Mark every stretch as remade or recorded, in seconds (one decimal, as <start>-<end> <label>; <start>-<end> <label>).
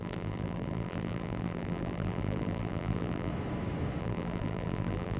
0.0-3.3 remade; 3.3-4.0 recorded; 4.0-5.2 remade